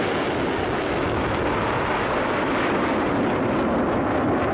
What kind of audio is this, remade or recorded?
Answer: recorded